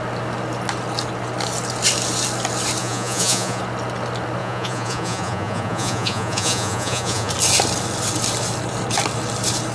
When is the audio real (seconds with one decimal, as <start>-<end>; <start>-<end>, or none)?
0.0-2.8; 3.6-4.4; 7.3-9.7